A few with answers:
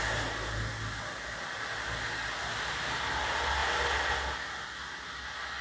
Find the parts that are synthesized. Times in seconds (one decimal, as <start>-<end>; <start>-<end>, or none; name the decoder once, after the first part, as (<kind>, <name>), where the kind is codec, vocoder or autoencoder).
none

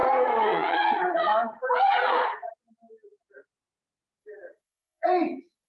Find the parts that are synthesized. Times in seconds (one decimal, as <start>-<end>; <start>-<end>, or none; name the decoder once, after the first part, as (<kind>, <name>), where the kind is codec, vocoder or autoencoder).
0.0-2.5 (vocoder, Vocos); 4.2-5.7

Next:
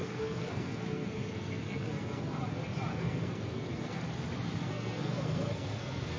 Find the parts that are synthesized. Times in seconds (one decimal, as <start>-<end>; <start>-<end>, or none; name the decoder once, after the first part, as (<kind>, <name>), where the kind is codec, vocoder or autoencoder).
0.0-2.4 (codec, SNAC); 2.9-4.0; 4.6-6.2